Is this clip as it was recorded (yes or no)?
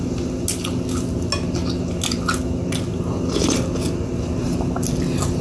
yes